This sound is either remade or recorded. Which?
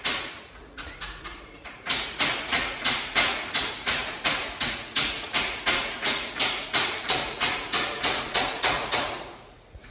remade